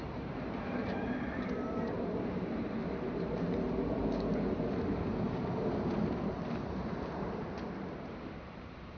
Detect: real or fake fake